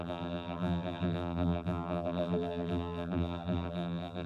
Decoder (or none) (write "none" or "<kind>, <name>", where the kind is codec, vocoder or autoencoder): vocoder, BigVGAN v2